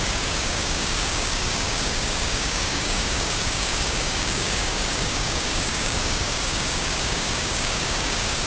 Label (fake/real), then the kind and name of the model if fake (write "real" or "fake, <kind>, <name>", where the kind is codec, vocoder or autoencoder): fake, codec, DAC